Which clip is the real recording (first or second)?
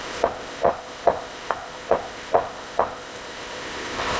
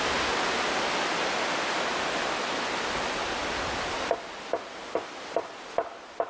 second